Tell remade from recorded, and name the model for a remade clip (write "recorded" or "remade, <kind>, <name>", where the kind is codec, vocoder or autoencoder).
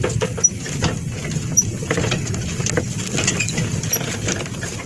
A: recorded